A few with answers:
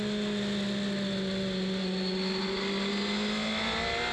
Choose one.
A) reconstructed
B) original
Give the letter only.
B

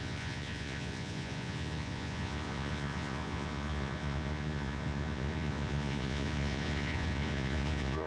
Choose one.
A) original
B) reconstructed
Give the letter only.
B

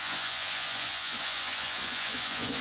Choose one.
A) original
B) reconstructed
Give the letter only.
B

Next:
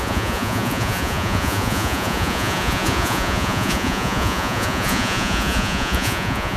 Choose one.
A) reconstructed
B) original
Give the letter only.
A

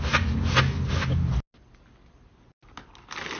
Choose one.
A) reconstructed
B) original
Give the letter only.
B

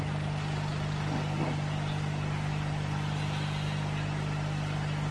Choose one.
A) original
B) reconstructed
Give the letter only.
A